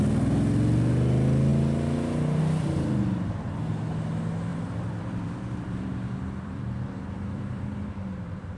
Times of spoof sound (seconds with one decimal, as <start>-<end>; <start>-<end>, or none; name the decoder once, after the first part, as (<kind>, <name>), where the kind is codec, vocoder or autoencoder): 4.5-7.9 (vocoder, BigVGAN v2)